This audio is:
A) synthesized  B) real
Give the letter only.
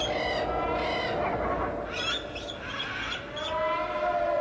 B